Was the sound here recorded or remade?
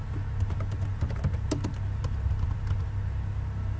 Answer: recorded